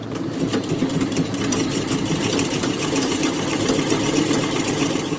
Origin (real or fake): fake